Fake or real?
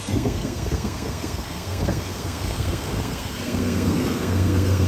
fake